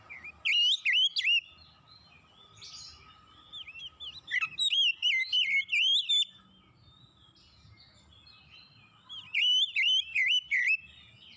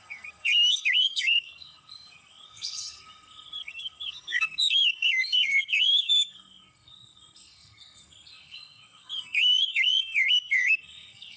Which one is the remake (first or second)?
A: second